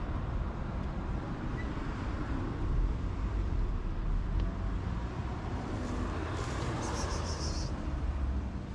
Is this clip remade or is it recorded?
remade